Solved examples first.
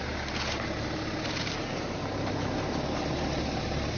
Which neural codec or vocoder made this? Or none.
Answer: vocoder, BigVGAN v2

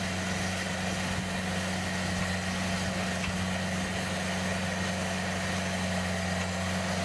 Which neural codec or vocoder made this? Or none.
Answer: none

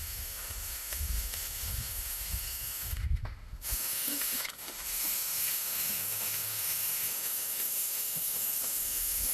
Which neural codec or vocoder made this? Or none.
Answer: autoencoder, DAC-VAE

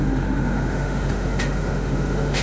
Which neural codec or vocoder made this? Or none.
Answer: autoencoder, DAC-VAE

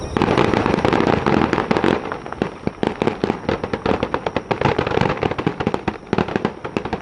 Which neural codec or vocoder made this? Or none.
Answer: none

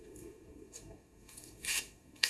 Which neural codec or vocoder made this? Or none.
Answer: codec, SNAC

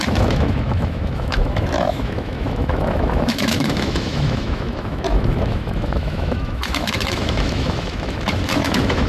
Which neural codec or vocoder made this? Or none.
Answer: autoencoder, DAC-VAE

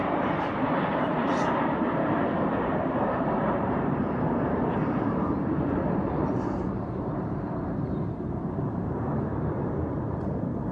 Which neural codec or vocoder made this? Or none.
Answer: vocoder, BigVGAN v2